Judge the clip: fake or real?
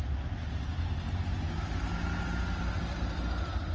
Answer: real